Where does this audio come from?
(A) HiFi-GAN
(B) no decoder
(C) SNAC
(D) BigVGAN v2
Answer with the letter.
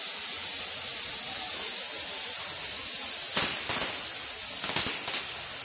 B